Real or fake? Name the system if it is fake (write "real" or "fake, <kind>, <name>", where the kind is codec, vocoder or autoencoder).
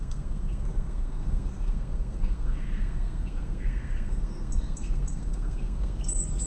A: fake, codec, SNAC